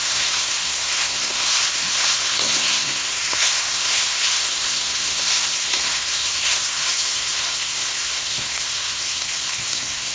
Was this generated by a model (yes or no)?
yes